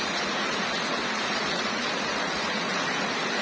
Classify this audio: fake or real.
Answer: fake